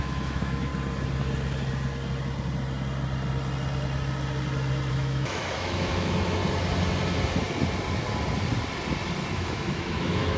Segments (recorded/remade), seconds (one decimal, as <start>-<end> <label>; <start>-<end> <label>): 0.0-0.7 remade; 0.7-4.9 recorded; 4.9-6.4 remade; 6.4-9.3 recorded; 9.3-10.4 remade